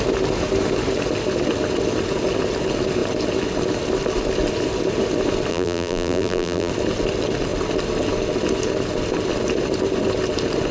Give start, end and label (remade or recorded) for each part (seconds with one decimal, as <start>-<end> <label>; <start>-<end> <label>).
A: 0.0-5.5 recorded; 5.5-6.7 remade; 6.7-10.7 recorded